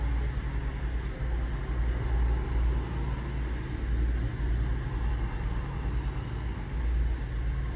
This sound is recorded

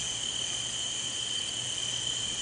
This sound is recorded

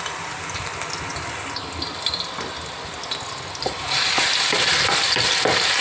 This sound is recorded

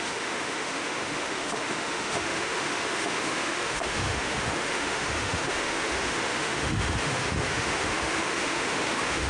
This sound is remade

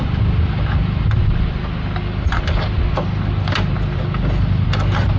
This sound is recorded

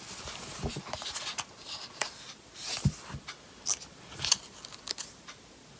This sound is recorded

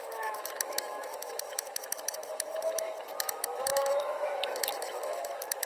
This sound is remade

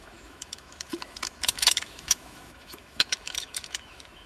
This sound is remade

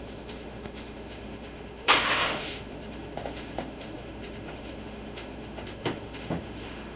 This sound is remade